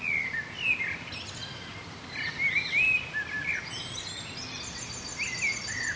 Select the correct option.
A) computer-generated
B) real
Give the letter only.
B